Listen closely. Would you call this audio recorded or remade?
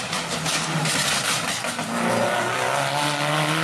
recorded